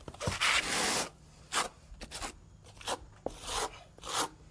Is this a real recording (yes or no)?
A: yes